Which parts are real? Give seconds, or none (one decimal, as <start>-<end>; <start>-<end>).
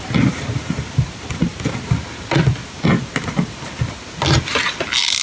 0.0-5.2